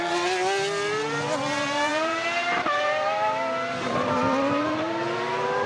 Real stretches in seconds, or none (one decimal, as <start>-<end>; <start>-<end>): 0.0-5.7